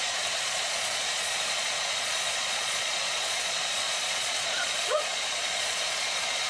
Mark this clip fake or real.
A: fake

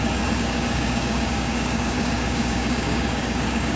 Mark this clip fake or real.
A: fake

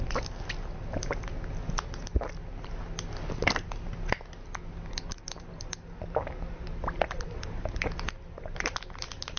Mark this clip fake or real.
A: real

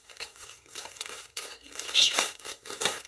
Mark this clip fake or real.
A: fake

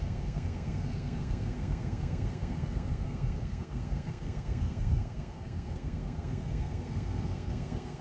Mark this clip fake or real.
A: fake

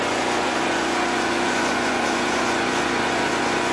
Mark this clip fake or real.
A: fake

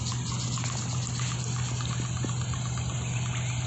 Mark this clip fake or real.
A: real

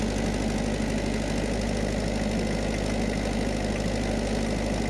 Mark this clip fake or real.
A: real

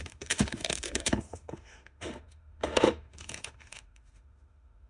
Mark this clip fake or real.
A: fake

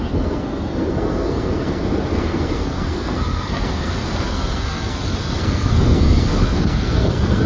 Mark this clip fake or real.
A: fake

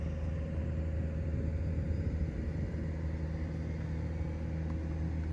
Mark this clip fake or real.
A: real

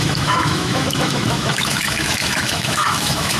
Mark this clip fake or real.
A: fake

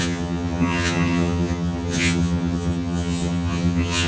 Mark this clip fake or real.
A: fake